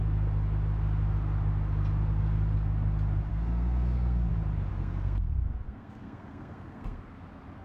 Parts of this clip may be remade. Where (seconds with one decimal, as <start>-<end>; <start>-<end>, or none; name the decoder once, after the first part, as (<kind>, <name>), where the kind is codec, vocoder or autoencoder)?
3.3-4.3 (codec, SNAC); 4.7-7.0